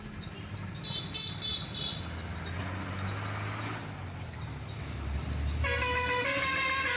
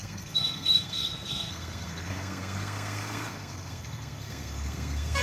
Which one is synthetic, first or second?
second